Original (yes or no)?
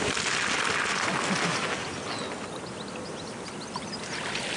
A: yes